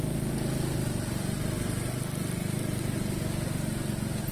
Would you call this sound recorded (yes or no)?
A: yes